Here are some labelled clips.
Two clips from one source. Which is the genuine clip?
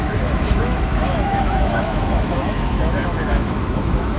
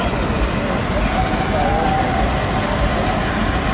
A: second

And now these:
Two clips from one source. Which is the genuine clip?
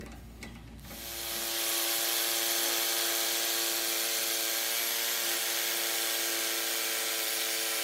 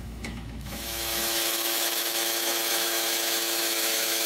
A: first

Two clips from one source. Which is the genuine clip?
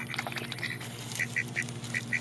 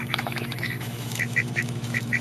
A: first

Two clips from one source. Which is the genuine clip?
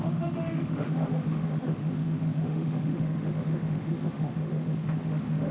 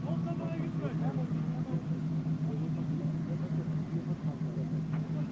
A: second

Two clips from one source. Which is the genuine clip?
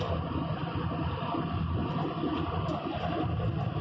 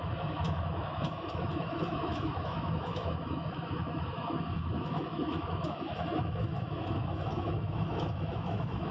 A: first